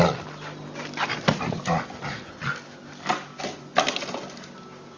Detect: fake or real real